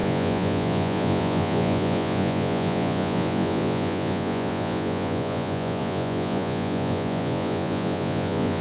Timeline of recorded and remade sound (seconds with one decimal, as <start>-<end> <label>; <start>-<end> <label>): 0.0-8.6 remade